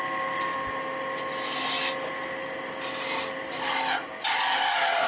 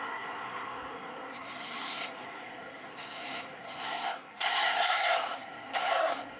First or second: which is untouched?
first